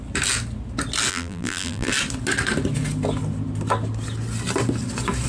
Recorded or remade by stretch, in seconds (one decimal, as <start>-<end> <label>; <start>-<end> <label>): 0.0-1.1 recorded; 1.1-1.9 remade; 1.9-5.3 recorded